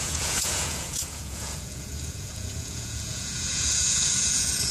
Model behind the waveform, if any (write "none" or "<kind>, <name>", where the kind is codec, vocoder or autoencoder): vocoder, Vocos